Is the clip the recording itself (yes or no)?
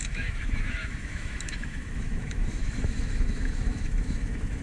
no